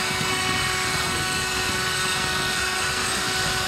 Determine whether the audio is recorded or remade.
remade